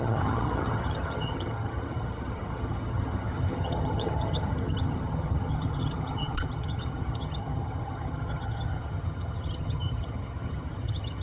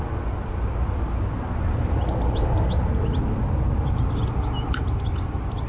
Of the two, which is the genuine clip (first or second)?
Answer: second